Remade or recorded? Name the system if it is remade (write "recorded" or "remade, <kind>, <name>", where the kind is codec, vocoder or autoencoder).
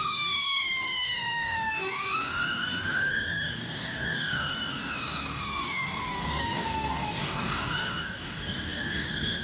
remade, codec, DAC